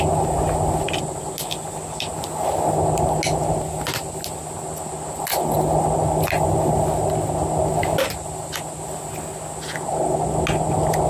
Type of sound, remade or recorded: recorded